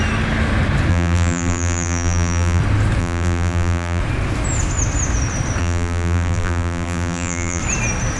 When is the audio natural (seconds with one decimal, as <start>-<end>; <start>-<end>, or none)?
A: 0.0-0.9; 2.6-3.0; 4.0-5.6; 7.6-8.2